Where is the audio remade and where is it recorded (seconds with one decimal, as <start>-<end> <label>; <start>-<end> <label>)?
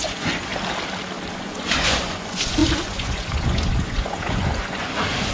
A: 0.0-0.5 remade; 0.5-1.3 recorded; 1.3-5.3 remade